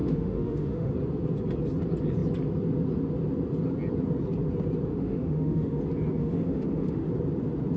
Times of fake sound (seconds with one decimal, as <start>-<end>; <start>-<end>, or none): 0.0-0.9; 4.9-5.8; 6.2-7.1